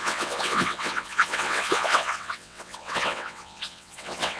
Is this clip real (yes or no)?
no